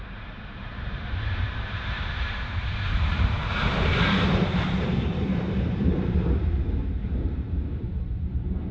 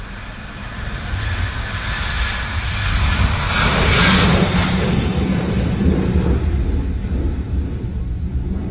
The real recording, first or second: second